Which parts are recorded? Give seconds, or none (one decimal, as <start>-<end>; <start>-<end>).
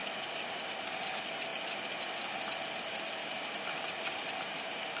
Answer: 0.0-5.0